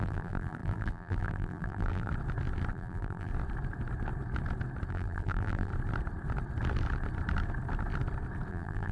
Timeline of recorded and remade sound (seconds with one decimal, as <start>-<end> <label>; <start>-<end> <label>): 0.0-2.1 remade; 2.1-2.7 recorded; 2.7-3.3 remade; 3.3-4.9 recorded; 4.9-5.7 remade; 5.7-8.5 recorded; 8.5-8.9 remade